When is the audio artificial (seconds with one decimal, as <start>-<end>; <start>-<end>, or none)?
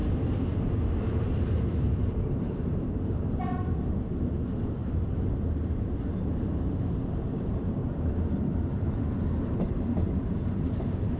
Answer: 1.4-7.8; 9.7-11.2